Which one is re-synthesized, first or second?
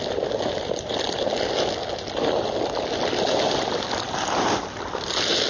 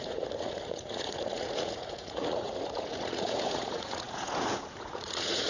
second